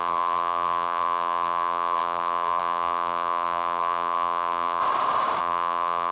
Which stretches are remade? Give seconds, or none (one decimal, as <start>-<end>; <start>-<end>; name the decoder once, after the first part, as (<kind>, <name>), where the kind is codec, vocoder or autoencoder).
0.0-4.8 (vocoder, BigVGAN v2); 5.4-6.1